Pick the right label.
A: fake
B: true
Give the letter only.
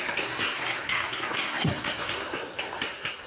A